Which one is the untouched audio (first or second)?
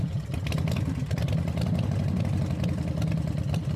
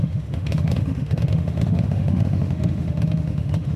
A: first